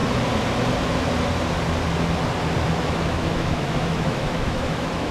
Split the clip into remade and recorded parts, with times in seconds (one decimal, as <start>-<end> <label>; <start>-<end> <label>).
0.0-2.8 recorded; 2.8-5.1 remade